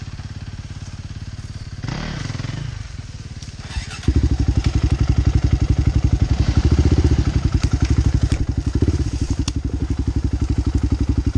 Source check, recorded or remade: remade